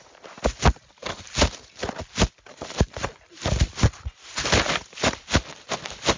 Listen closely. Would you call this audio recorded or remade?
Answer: recorded